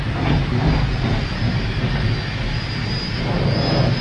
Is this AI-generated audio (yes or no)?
no